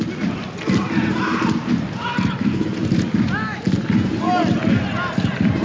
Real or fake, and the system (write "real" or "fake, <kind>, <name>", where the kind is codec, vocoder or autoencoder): real